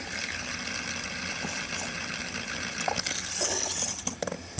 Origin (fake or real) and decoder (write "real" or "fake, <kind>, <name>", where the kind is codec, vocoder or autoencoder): real